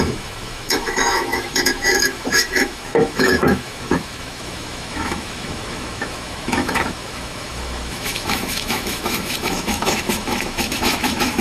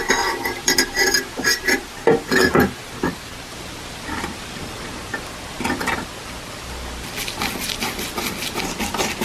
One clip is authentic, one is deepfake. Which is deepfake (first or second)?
first